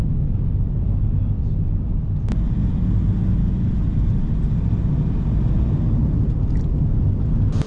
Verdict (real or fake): real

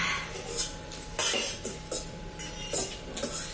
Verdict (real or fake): real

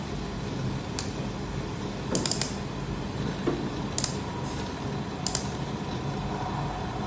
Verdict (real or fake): real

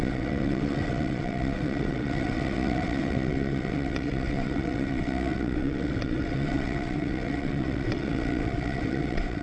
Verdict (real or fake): fake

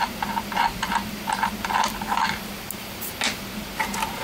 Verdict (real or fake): real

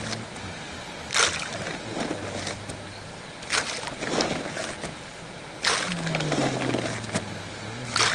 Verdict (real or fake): real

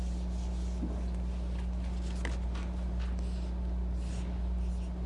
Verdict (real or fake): real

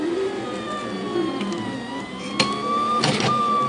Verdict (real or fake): real